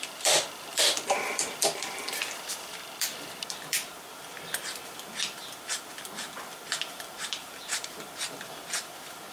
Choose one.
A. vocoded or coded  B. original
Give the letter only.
A